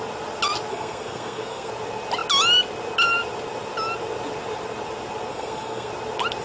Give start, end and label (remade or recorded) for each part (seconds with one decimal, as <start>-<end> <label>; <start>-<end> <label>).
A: 0.0-0.7 recorded; 0.7-1.7 remade; 1.7-5.3 recorded; 5.3-5.9 remade; 5.9-6.4 recorded